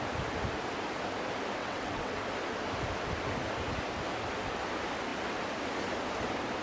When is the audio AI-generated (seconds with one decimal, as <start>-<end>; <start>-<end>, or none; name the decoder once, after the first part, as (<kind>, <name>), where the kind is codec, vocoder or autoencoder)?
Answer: 1.6-2.2 (vocoder, WaveNeXt)